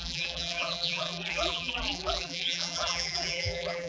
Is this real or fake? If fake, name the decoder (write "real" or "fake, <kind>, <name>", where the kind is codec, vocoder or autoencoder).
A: fake, vocoder, BigVGAN v2